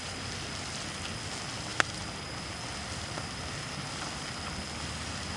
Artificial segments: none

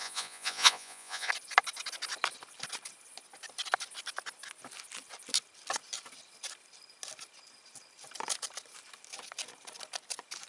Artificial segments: 0.0-1.3

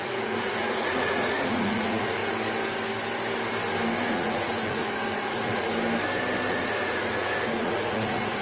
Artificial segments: 0.0-2.2; 4.1-5.7; 6.5-8.4

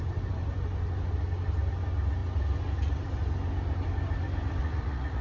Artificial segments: 4.6-5.2

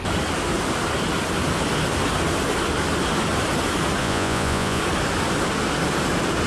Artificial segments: 4.0-4.8

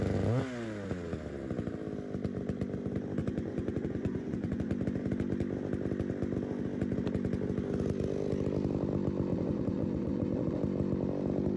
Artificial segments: 3.2-4.7; 9.3-10.6